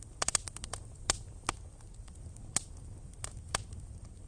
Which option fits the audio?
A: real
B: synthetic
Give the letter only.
A